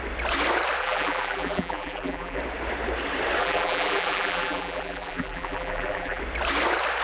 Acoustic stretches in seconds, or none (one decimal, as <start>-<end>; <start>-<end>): 0.0-0.8; 2.4-3.4; 6.2-7.0